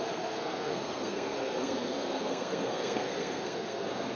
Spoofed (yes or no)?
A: yes